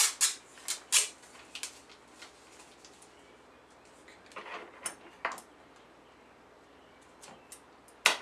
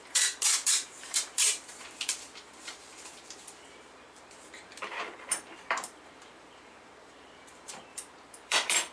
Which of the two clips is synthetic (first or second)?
second